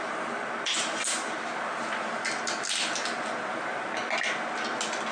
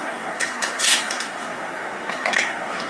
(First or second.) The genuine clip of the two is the first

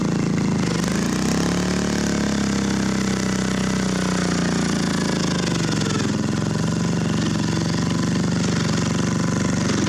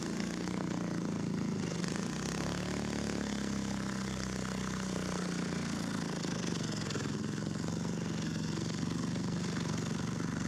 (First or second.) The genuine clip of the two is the first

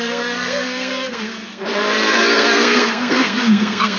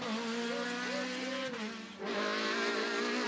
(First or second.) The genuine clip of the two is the second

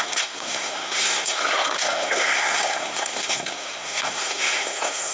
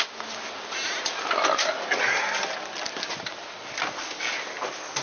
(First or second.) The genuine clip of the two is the second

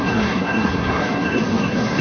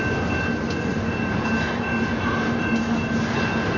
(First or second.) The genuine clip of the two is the second